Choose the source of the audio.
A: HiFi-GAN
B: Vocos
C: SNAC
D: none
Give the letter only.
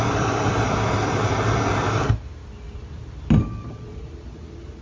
D